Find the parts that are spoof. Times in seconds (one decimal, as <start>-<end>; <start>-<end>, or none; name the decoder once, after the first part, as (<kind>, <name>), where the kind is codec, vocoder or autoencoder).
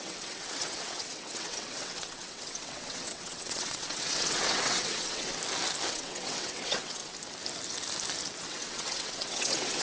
0.0-5.3 (vocoder, WaveNeXt); 5.9-7.0; 8.4-9.8